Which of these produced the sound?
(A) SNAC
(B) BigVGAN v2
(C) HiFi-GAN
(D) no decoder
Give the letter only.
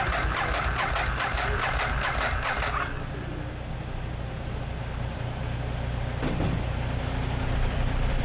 D